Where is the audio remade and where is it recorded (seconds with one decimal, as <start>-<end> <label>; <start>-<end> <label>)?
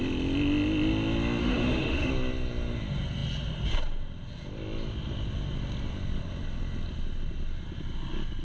0.0-1.4 recorded; 1.4-2.1 remade; 2.1-8.4 recorded